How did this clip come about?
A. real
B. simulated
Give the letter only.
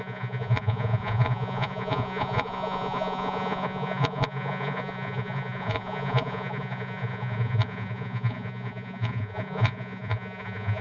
B